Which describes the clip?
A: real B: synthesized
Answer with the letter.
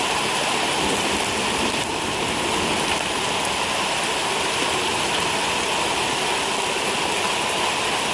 A